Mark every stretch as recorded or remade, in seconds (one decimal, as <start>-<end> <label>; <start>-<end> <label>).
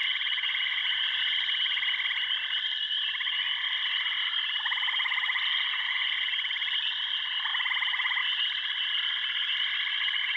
0.0-0.8 remade; 0.8-5.5 recorded; 5.5-6.3 remade; 6.3-10.4 recorded